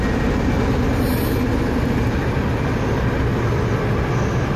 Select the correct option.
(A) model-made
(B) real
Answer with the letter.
B